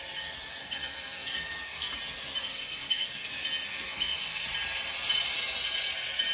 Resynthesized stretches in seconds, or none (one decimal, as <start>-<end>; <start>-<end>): 0.6-1.9; 2.4-3.3; 3.7-4.5